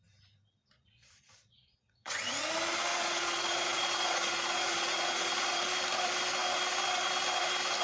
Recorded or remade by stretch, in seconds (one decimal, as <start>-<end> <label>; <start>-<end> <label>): 0.0-0.6 recorded; 0.6-2.4 remade; 2.4-2.9 recorded; 2.9-5.6 remade; 5.6-7.8 recorded